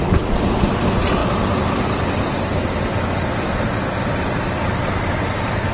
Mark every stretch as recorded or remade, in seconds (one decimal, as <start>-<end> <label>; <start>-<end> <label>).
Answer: 0.0-5.7 recorded